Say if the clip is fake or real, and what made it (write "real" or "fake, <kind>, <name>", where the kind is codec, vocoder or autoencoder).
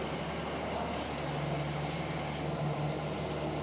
real